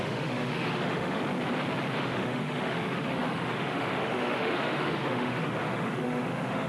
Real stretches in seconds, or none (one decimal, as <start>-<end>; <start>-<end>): 1.2-2.0